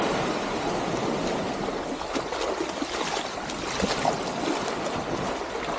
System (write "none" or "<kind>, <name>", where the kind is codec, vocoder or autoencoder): none